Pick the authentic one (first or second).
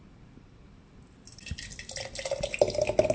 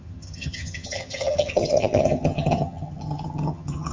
first